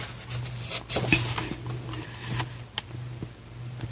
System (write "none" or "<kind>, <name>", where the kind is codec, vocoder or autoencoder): none